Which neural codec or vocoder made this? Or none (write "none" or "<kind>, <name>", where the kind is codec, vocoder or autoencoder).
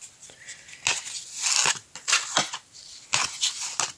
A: none